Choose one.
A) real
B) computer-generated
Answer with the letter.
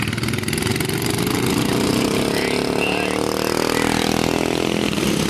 A